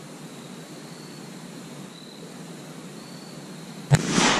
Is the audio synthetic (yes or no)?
no